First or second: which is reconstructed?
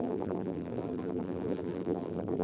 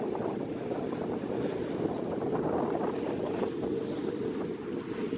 first